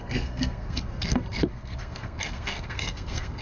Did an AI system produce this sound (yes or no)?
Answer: yes